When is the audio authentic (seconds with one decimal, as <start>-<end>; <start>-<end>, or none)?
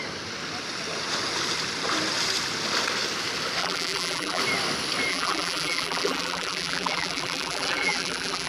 0.0-3.6; 4.4-5.1